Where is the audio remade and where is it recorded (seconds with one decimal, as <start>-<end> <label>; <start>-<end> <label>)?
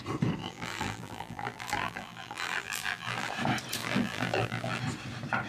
0.0-0.4 recorded; 0.4-3.3 remade; 3.3-3.8 recorded; 3.8-4.8 remade; 4.8-5.5 recorded